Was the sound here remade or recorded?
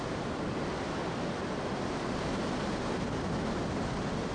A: recorded